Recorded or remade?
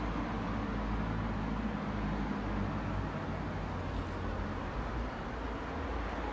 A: recorded